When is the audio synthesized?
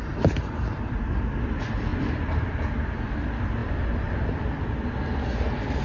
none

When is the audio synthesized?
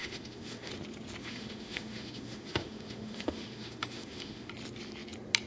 0.0-0.7 (autoencoder, DAC-VAE); 1.2-4.5